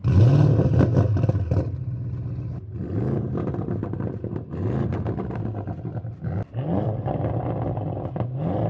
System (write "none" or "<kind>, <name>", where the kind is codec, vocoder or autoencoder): none